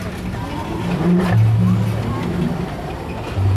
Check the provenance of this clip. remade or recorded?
recorded